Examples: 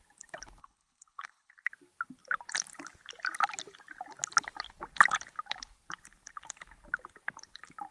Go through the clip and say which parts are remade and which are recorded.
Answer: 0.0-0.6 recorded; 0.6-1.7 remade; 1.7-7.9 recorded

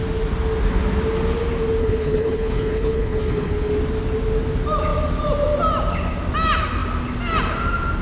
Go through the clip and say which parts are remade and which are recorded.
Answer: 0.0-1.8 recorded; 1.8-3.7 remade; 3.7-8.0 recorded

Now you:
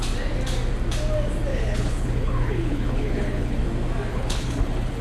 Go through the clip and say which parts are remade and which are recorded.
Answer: 0.0-1.5 recorded; 1.5-3.6 remade; 3.6-4.1 recorded; 4.1-5.0 remade

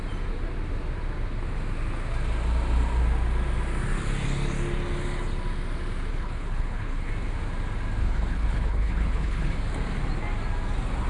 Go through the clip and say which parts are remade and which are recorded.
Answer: 0.0-6.1 recorded; 6.1-7.1 remade; 7.1-8.0 recorded; 8.0-9.6 remade; 9.6-11.1 recorded

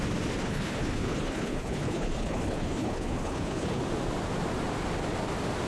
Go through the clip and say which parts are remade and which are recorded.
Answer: 0.0-0.4 recorded; 0.4-3.8 remade; 3.8-5.7 recorded